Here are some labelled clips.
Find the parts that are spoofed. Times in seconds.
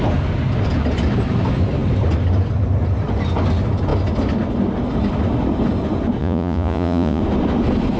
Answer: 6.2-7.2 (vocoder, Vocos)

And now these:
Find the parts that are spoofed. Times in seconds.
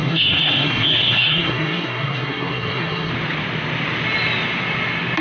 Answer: 0.0-3.1 (codec, SNAC)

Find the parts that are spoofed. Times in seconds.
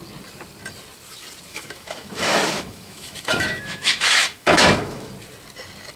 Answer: 1.5-5.1 (autoencoder, DAC-VAE)